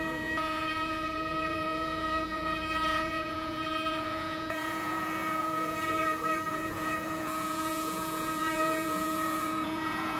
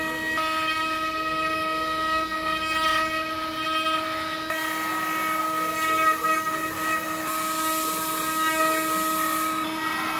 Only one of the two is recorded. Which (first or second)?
second